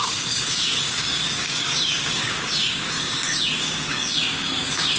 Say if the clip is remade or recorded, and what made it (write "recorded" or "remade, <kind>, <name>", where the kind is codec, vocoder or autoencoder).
remade, codec, DAC